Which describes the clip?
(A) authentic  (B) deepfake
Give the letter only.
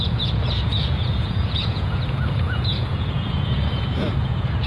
B